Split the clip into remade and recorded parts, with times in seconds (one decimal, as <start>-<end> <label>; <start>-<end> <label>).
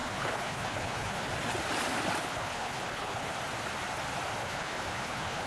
0.0-1.3 remade; 1.3-2.2 recorded; 2.2-3.3 remade; 3.3-4.4 recorded; 4.4-5.5 remade